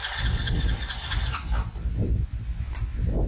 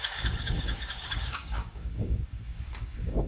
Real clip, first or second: first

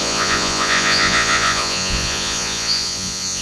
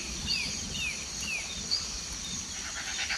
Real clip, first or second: second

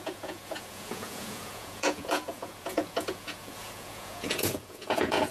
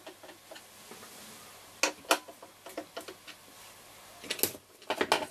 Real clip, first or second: second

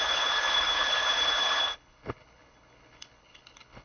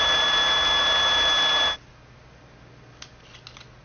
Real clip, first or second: second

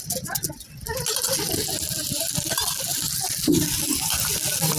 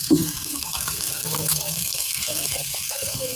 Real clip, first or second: first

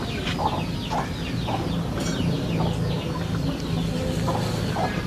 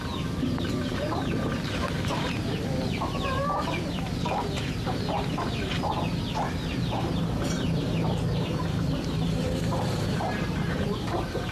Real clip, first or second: first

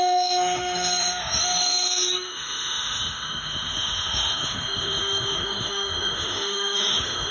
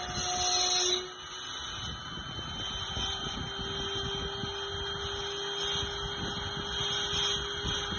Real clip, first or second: second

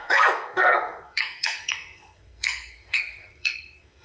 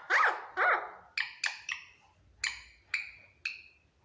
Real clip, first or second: second